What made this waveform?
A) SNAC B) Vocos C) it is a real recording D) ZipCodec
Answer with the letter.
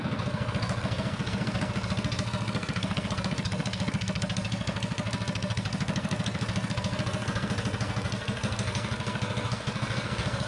A